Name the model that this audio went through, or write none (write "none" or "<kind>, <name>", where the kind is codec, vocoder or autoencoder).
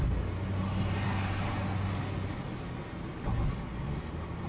none